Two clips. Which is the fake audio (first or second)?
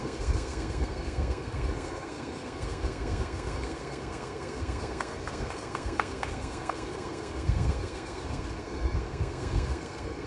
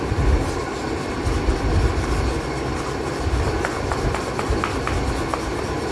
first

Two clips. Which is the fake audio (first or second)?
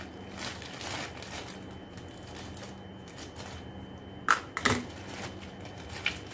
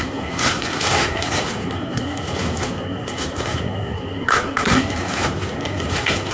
second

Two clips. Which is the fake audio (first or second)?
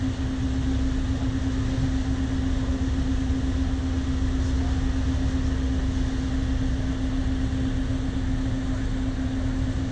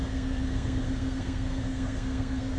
second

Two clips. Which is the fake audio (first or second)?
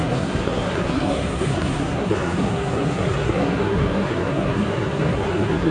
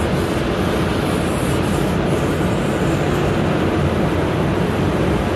first